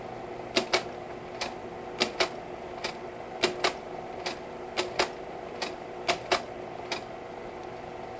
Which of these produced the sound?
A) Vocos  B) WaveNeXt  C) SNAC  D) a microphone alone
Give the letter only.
D